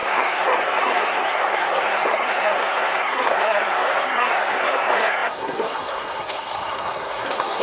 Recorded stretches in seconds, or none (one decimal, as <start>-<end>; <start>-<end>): none